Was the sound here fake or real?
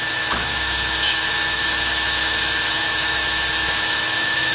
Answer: fake